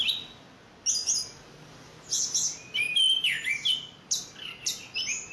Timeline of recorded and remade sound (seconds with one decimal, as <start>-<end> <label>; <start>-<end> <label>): 0.0-5.3 recorded